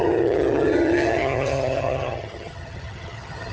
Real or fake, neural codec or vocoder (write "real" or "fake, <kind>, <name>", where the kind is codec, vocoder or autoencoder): fake, vocoder, HiFi-GAN